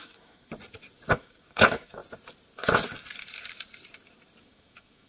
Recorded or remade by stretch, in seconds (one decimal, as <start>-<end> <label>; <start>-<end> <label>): 0.0-0.5 remade; 0.5-1.1 recorded; 1.1-2.0 remade; 2.0-4.4 recorded; 4.4-5.1 remade